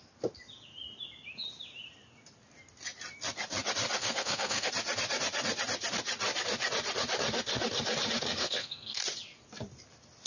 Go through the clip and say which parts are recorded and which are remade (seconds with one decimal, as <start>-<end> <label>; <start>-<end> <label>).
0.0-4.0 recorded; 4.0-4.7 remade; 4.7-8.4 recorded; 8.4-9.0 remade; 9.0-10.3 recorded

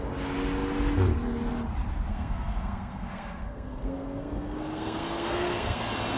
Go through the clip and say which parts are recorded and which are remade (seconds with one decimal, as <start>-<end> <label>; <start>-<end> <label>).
0.0-2.1 recorded; 2.1-5.8 remade; 5.8-6.2 recorded

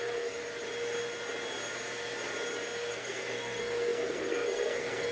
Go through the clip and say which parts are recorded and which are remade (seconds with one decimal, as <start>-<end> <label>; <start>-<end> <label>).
0.0-0.4 remade; 0.4-2.9 recorded; 2.9-5.1 remade

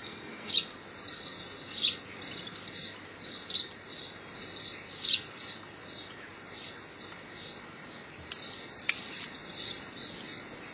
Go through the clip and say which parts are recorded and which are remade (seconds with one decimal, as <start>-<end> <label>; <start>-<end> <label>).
0.0-0.5 remade; 0.5-10.7 recorded

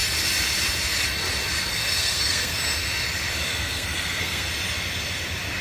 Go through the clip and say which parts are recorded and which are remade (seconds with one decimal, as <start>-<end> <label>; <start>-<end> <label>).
0.0-1.7 recorded; 1.7-2.6 remade; 2.6-3.5 recorded; 3.5-4.5 remade; 4.5-5.6 recorded

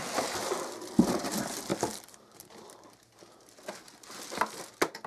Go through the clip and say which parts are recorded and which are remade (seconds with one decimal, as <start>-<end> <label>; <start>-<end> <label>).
0.0-5.1 recorded

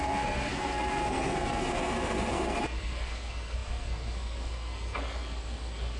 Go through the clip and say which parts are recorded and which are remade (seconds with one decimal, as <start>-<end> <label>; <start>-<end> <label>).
0.0-6.0 remade

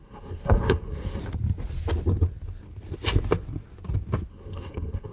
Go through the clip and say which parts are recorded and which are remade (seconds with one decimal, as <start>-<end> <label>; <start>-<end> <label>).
0.0-1.2 remade; 1.2-4.3 recorded; 4.3-5.1 remade